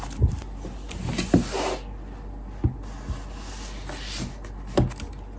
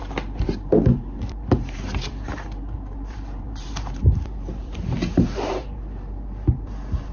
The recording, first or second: first